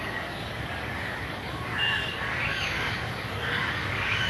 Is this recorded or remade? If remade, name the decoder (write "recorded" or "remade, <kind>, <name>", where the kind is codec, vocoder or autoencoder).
remade, codec, DAC